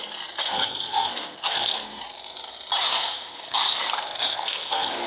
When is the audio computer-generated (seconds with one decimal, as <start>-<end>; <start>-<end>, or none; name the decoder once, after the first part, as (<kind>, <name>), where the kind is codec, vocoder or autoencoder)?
0.4-2.0 (codec, SNAC); 2.9-5.1